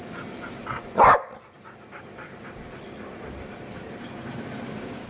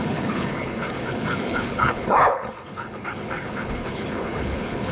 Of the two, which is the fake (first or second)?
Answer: second